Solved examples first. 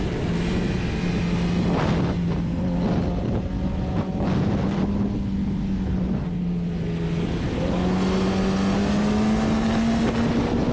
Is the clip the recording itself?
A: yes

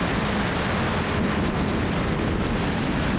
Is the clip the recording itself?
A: no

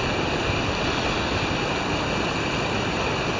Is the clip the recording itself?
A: yes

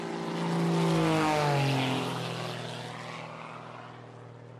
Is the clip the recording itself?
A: yes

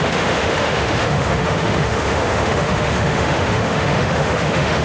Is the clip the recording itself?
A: no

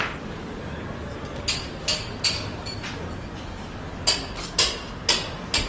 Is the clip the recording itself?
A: yes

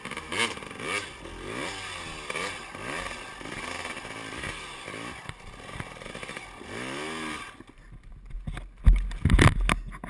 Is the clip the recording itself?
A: yes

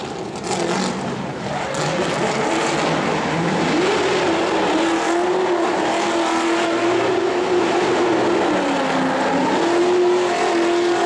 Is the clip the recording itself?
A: yes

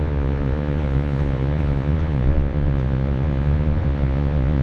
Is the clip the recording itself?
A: no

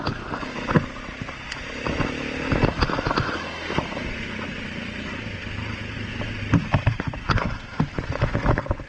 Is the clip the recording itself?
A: yes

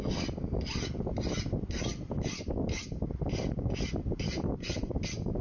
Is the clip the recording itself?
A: yes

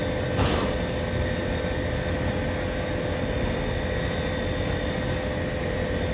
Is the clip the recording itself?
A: yes